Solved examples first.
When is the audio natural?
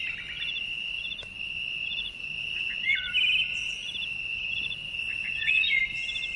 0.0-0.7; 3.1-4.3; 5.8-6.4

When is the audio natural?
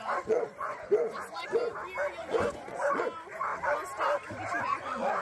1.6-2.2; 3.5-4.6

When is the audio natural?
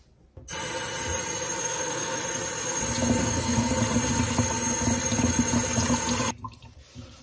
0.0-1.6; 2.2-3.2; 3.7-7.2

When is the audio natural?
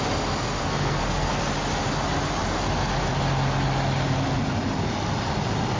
0.0-0.6; 1.3-5.8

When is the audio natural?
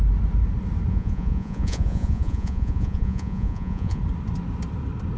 0.0-0.9; 4.0-5.2